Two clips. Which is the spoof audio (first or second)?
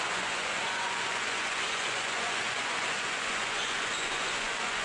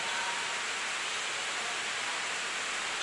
first